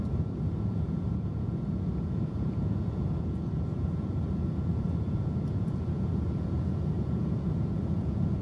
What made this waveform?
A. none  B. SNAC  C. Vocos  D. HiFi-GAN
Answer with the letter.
C